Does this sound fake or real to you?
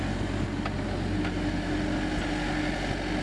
real